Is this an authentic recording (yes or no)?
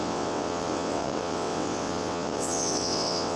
no